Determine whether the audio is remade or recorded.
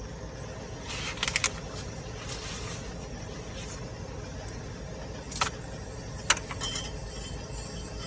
recorded